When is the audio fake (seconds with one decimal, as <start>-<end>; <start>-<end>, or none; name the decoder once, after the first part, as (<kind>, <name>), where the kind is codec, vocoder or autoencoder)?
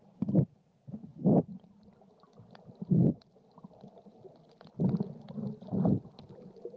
none